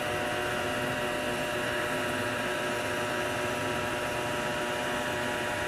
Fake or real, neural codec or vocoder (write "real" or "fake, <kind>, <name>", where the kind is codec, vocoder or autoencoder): real